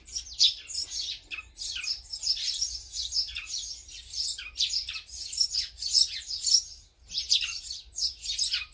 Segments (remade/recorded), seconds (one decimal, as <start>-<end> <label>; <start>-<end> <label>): 0.0-8.7 recorded